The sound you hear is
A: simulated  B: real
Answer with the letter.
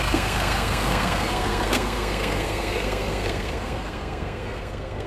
A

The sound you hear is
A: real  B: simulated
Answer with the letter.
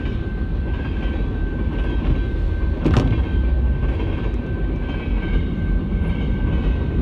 A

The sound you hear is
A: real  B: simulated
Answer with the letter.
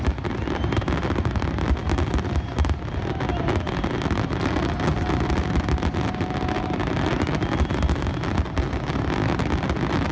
A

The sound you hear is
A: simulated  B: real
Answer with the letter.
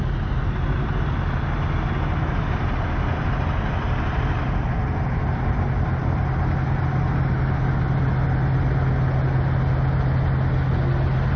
B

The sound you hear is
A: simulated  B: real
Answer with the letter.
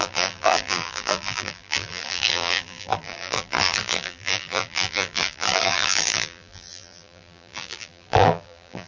A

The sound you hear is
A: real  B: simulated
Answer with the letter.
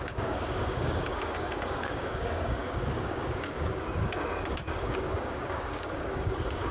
B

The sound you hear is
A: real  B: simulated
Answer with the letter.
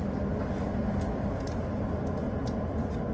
A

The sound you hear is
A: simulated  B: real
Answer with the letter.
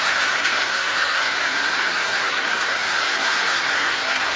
A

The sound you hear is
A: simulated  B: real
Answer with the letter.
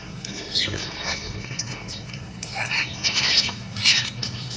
A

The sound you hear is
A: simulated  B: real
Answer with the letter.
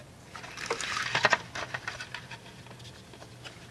B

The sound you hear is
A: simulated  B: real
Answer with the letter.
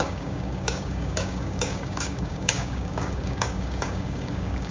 A